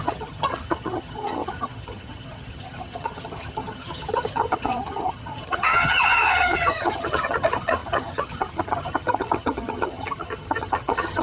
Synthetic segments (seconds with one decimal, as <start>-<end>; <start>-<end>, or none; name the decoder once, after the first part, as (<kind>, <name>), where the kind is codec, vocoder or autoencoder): 0.0-11.2 (vocoder, HiFi-GAN)